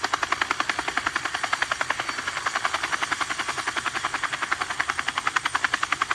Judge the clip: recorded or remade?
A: recorded